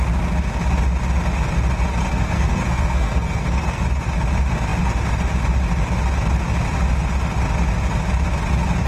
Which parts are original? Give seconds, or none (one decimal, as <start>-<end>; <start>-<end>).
0.0-2.0; 3.8-8.9